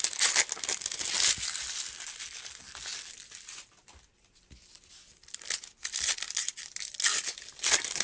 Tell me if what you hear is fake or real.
real